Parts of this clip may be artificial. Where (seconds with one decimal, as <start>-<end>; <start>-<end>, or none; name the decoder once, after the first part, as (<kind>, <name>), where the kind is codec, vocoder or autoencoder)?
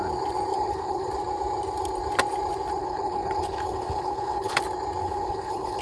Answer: 0.5-1.1 (codec, HILCodec); 2.8-4.6; 5.0-5.8